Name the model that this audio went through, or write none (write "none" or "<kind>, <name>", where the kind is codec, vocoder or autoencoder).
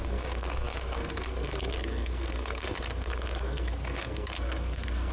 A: codec, SNAC